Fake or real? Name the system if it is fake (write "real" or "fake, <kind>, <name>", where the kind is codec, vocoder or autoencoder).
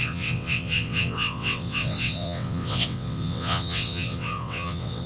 fake, vocoder, WaveNeXt